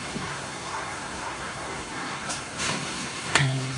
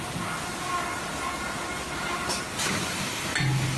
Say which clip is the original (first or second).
second